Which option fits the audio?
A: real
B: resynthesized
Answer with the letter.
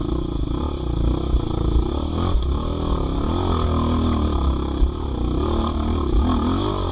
A